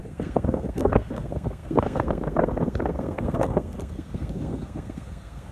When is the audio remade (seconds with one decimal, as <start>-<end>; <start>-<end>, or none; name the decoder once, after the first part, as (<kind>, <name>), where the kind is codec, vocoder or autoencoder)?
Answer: 0.0-5.5 (codec, SNAC)